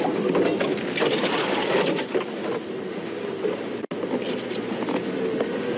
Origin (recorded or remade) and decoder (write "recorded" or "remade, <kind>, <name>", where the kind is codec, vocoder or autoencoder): recorded